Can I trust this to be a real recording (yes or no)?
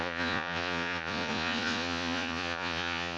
no